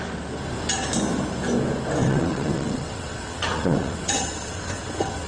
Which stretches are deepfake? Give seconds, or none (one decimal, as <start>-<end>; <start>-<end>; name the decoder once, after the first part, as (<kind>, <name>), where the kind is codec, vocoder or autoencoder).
2.0-5.3 (vocoder, WaveNeXt)